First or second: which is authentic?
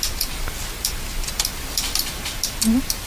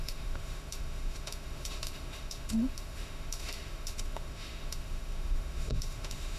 first